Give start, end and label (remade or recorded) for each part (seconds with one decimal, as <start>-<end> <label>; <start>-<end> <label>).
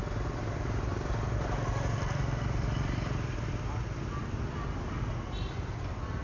0.0-6.2 recorded